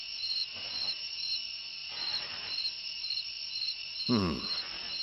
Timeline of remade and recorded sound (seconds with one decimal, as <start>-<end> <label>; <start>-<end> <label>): 0.0-0.4 recorded; 0.4-1.3 remade; 1.3-1.8 recorded; 1.8-4.4 remade; 4.4-5.0 recorded